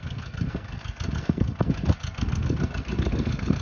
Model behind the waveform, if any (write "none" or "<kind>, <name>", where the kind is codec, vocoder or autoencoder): codec, SNAC